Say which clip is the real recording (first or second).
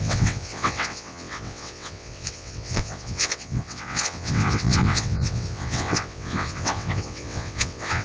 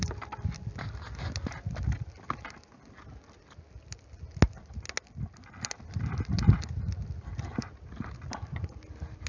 second